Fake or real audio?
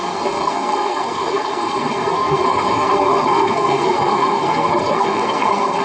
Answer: fake